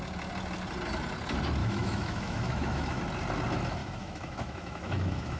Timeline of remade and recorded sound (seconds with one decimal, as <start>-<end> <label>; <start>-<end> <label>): 0.0-1.6 recorded; 1.6-3.0 remade; 3.0-3.8 recorded; 3.8-5.4 remade

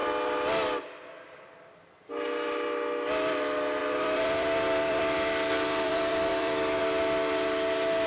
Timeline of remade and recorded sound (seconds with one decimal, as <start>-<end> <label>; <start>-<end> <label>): 0.0-3.8 recorded; 3.8-6.8 remade; 6.8-8.1 recorded

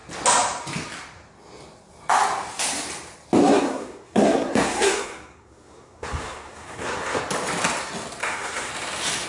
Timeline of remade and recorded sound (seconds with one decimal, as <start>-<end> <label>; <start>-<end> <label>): 0.0-3.4 recorded; 3.4-7.2 remade; 7.2-8.2 recorded; 8.2-8.7 remade; 8.7-9.3 recorded

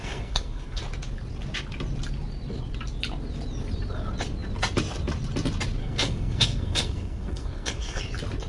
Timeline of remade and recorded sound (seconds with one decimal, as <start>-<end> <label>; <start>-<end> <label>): 0.0-0.8 remade; 0.8-5.8 recorded; 5.8-8.0 remade; 8.0-8.5 recorded